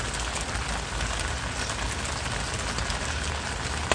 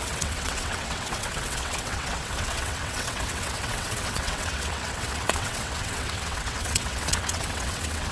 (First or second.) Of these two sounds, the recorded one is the first